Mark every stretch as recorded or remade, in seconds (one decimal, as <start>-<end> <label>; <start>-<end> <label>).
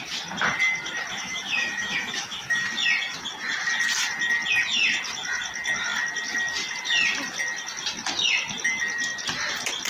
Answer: 0.0-1.1 recorded; 1.1-2.6 remade; 2.6-9.9 recorded